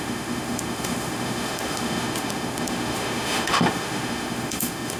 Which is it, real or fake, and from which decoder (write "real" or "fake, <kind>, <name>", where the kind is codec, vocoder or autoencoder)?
fake, autoencoder, DAC-VAE